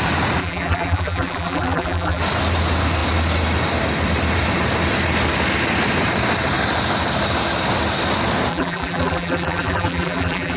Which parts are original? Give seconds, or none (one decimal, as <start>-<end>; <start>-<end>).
0.0-0.4; 2.2-8.5

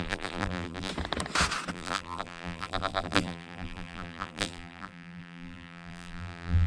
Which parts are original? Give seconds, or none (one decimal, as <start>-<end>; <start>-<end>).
0.9-1.7

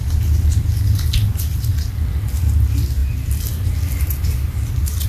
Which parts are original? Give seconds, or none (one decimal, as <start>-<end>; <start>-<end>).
0.0-5.1

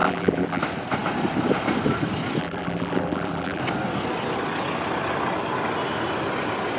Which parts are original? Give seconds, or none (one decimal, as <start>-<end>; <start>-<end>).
0.6-2.4; 3.6-6.8

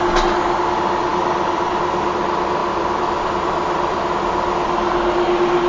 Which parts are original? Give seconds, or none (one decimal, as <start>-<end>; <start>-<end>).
0.0-2.6; 4.1-5.7

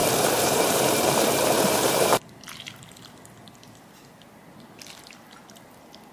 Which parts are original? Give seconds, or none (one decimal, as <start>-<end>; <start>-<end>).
2.2-6.1